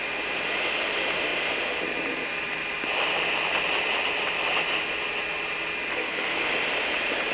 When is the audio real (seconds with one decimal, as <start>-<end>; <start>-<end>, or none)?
0.0-5.9; 6.5-7.3